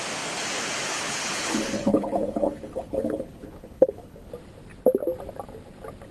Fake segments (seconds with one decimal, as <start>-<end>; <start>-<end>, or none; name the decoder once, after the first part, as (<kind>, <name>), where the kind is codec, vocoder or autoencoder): 0.9-4.3 (codec, HILCodec)